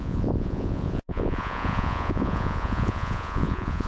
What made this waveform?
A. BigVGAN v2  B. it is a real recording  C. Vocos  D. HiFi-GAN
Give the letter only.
C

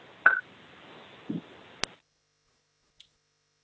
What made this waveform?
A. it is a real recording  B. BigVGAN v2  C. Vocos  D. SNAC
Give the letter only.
A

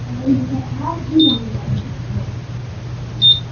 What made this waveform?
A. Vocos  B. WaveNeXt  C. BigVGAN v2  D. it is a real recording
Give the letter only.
D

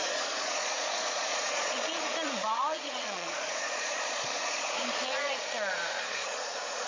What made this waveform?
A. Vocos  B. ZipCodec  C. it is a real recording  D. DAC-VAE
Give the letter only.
A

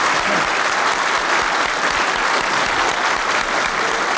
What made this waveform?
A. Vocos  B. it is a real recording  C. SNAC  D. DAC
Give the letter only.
B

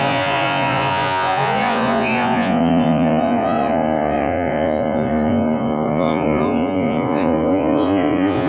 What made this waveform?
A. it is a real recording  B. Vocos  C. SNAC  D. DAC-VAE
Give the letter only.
B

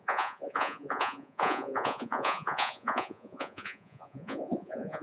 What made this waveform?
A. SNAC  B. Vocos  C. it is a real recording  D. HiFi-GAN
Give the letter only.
B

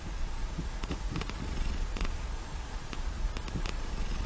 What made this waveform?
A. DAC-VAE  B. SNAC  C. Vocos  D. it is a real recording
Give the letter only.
C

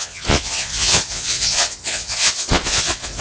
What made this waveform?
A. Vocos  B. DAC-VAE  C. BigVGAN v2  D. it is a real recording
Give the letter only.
A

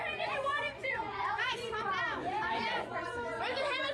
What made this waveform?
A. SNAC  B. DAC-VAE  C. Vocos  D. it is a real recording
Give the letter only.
C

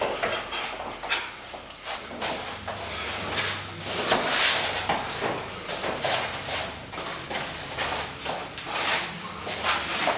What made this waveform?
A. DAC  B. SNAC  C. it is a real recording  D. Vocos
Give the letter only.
C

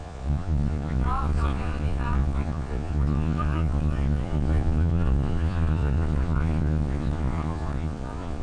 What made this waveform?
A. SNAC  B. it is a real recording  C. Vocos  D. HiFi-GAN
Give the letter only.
C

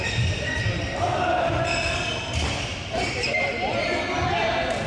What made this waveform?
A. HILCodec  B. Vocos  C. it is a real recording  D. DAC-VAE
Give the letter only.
C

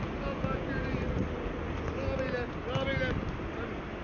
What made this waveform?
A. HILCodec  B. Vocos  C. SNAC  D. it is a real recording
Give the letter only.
D